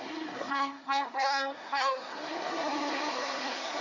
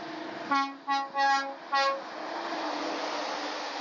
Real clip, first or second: second